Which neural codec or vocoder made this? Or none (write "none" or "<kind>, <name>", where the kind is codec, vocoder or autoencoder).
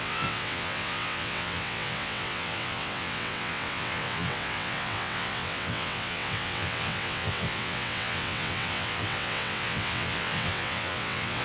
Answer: vocoder, WaveNeXt